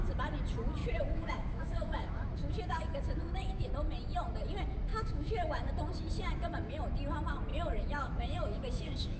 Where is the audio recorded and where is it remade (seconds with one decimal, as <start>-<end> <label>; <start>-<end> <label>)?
0.0-0.8 recorded; 0.8-3.7 remade; 3.7-4.9 recorded; 4.9-5.7 remade; 5.7-7.5 recorded; 7.5-9.2 remade